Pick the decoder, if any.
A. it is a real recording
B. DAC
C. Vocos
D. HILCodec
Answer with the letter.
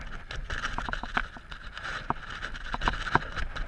A